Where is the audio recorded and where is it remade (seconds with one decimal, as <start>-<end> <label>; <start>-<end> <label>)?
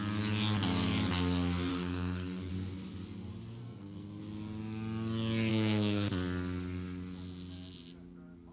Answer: 0.0-1.7 recorded; 1.7-2.5 remade; 2.5-3.6 recorded; 3.6-4.2 remade; 4.2-5.5 recorded; 5.5-6.1 remade; 6.1-8.5 recorded